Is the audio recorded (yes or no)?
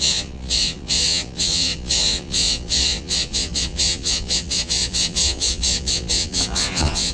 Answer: no